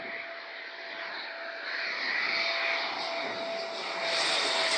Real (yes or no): yes